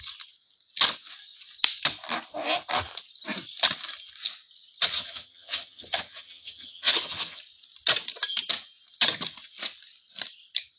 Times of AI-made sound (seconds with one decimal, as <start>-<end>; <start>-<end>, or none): 4.9-7.4